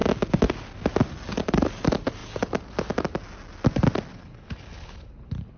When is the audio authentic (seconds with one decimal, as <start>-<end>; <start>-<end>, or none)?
0.0-4.1